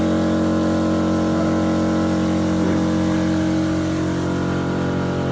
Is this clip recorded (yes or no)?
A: yes